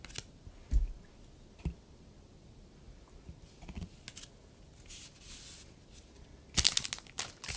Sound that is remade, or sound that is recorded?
recorded